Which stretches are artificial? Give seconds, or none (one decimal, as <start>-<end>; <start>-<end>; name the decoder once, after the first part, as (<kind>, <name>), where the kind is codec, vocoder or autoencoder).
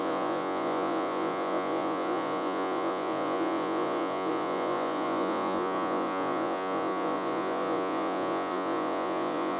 0.0-9.6 (vocoder, Vocos)